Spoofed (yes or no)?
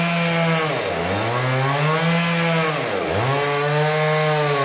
no